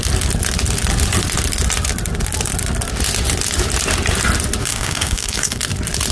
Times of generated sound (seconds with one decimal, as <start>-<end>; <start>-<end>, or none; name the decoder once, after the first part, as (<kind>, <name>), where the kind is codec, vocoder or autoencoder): 4.6-5.6 (codec, DAC)